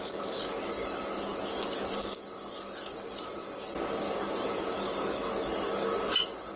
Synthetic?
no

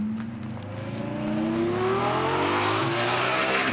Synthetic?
no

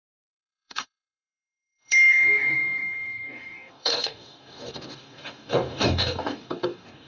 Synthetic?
yes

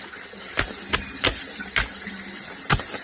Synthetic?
no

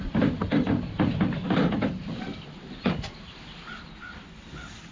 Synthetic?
yes